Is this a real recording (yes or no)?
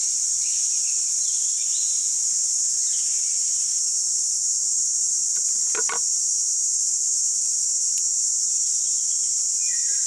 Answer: no